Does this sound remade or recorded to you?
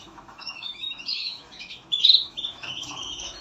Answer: remade